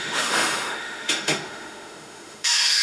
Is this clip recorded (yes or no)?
no